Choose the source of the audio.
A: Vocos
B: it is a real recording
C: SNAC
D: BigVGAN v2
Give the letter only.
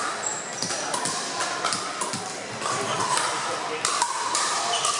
B